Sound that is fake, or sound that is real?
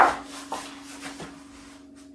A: real